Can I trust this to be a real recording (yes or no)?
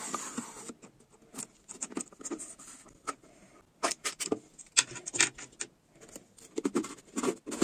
yes